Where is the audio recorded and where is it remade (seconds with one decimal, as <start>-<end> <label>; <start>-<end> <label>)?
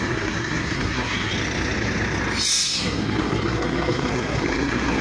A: 0.0-1.3 remade; 1.3-2.5 recorded; 2.5-5.0 remade